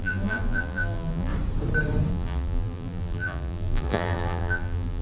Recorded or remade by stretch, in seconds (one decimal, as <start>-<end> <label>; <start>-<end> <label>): 0.0-1.3 remade; 1.3-2.1 recorded; 2.1-5.0 remade